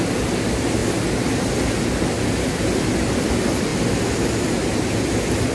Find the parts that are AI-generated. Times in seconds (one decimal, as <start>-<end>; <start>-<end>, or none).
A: none